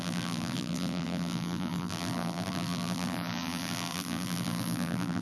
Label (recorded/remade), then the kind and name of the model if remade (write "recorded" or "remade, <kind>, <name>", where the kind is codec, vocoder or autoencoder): remade, vocoder, BigVGAN v2